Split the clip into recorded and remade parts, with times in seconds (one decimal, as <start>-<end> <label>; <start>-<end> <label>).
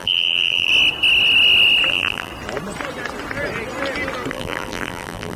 0.0-0.7 remade; 0.7-1.9 recorded; 1.9-2.3 remade; 2.3-4.3 recorded; 4.3-5.4 remade